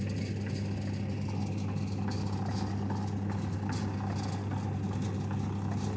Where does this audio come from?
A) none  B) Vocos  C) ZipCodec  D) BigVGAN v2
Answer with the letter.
A